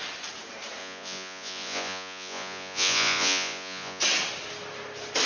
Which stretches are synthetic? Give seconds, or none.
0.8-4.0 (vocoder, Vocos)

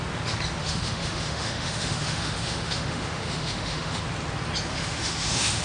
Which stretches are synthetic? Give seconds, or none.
0.6-4.0 (autoencoder, DAC-VAE); 4.7-5.6

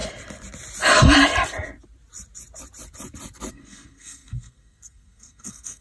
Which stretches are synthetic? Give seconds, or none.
3.5-5.8 (codec, SNAC)

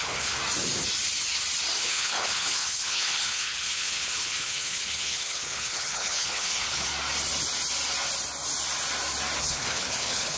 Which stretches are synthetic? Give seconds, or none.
0.0-0.4 (codec, HILCodec); 1.8-6.9; 9.4-10.4

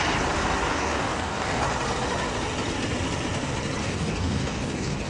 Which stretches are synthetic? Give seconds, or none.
0.7-1.6 (codec, DAC); 3.8-5.1

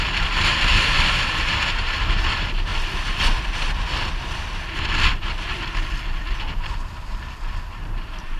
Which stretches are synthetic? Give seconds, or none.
0.0-2.7 (vocoder, BigVGAN v2); 7.7-8.4